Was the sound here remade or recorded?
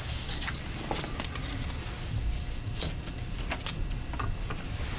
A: recorded